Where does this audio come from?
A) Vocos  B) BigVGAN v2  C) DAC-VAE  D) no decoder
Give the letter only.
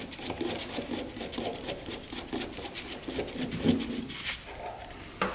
D